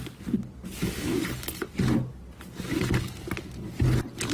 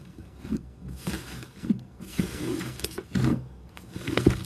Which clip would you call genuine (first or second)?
first